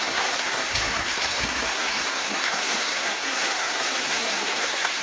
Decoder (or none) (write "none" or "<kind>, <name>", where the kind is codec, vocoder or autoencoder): codec, SNAC